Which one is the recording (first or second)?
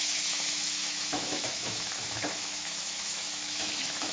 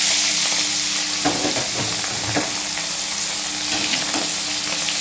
second